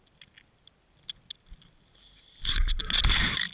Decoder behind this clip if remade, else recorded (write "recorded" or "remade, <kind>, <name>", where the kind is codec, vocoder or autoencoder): recorded